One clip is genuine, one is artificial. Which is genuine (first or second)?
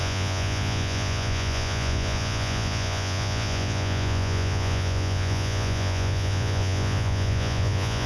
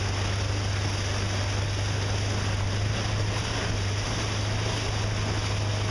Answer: second